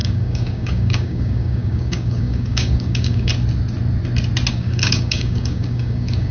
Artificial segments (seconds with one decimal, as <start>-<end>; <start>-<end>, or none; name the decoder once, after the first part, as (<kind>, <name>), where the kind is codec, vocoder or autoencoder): 0.0-3.3 (codec, DAC); 4.5-6.3